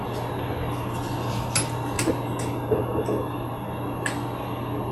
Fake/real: real